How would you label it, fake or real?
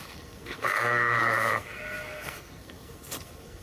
fake